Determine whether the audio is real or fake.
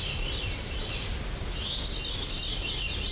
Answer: real